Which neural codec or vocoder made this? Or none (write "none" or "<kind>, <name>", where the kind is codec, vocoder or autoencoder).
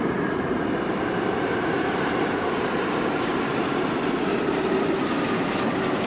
vocoder, BigVGAN v2